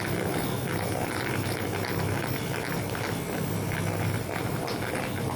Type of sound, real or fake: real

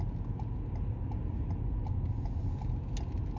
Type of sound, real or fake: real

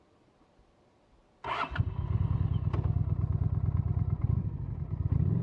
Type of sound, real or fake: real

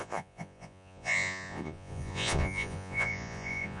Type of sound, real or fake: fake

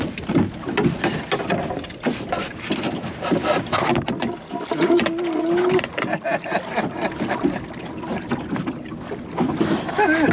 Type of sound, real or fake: real